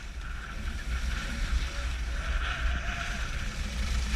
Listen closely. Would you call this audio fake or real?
real